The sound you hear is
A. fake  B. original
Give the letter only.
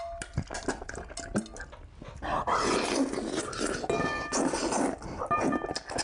B